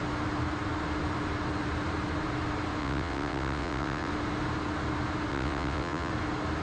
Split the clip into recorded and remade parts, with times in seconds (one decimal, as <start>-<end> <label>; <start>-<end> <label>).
0.0-2.8 recorded; 2.8-4.1 remade; 4.1-5.3 recorded; 5.3-6.1 remade; 6.1-6.6 recorded